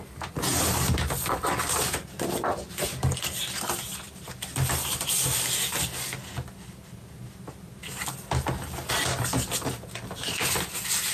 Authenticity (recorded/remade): recorded